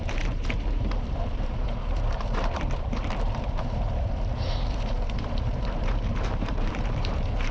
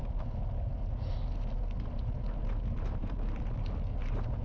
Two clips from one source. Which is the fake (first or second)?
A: first